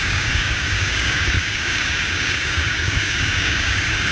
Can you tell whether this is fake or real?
fake